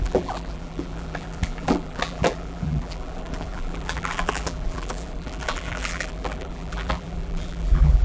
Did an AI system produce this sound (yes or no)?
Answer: yes